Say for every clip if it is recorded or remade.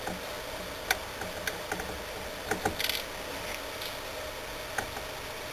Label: recorded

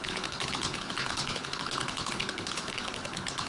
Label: remade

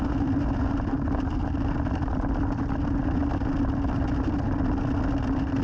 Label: recorded